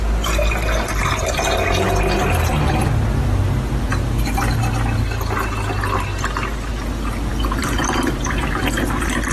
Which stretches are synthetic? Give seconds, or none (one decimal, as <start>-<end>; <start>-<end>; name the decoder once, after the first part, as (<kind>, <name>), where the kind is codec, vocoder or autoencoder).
7.3-8.5 (vocoder, BigVGAN v2)